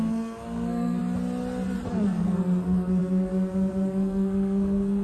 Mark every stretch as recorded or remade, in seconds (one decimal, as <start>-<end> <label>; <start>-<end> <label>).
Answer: 0.0-1.0 remade; 1.0-1.9 recorded; 1.9-5.0 remade